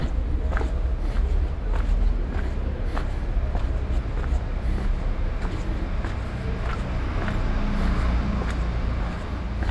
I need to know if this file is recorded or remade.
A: recorded